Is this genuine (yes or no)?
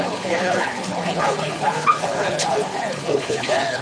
no